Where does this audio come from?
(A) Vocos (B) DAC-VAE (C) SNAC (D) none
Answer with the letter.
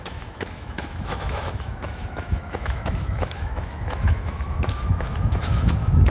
B